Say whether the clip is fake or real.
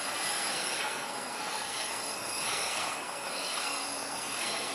fake